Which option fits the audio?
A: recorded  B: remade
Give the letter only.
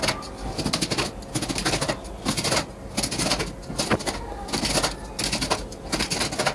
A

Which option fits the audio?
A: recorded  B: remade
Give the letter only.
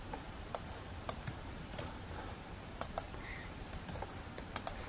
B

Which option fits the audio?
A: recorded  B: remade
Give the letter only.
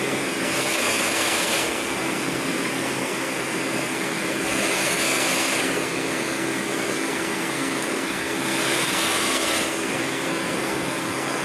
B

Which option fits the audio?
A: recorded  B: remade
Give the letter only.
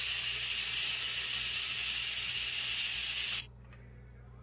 A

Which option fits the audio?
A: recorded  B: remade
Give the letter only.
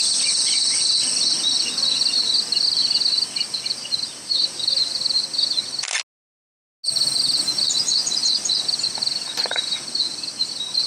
A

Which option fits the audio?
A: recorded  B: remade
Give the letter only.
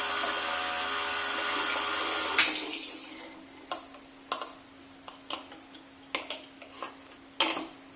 A